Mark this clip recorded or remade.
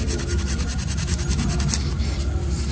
recorded